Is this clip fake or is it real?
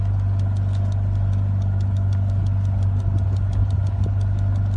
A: real